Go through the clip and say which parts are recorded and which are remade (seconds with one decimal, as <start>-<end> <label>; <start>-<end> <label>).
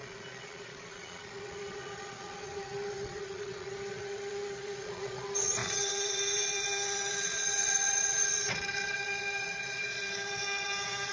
0.0-11.1 remade